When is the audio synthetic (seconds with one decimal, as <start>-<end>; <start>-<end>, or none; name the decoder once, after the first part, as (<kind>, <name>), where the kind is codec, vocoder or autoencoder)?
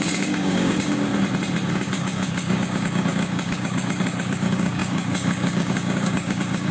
0.0-1.1 (codec, DAC); 1.7-6.7